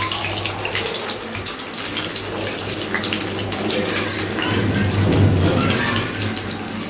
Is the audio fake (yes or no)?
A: no